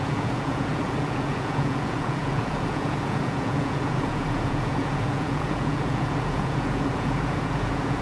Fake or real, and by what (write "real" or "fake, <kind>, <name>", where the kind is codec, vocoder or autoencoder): fake, vocoder, Vocos